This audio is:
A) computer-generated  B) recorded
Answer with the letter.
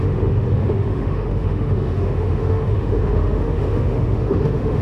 A